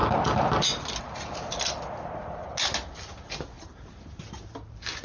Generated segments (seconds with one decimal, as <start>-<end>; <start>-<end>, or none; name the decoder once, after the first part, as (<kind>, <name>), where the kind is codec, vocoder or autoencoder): none